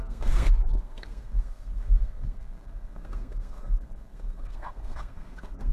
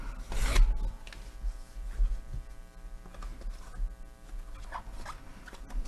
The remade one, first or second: first